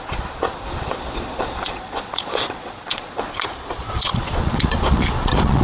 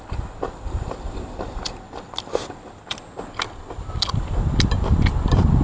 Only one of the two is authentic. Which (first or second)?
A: second